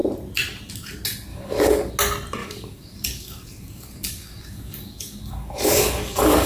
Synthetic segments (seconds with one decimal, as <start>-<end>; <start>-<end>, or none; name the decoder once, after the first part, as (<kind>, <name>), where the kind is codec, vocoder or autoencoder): 1.3-1.9 (codec, DAC); 2.4-6.5